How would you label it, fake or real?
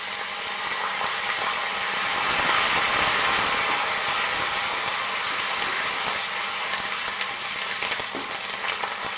real